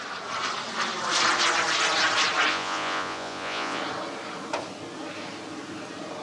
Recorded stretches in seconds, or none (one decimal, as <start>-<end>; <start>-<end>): 0.0-2.5; 3.8-6.2